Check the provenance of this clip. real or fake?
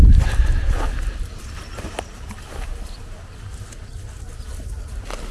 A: real